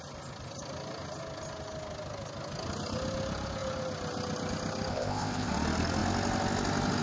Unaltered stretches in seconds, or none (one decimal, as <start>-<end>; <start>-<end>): 0.0-4.9; 5.5-7.0